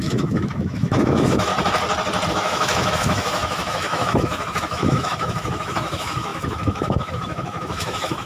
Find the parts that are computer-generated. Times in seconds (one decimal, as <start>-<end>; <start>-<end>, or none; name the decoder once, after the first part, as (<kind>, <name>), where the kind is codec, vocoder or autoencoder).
0.0-1.5 (autoencoder, DAC-VAE); 2.3-8.3